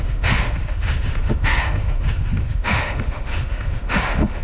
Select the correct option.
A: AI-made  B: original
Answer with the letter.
A